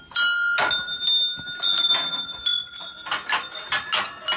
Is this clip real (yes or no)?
yes